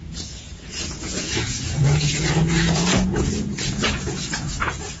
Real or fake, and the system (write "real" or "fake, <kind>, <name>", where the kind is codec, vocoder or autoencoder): fake, vocoder, Vocos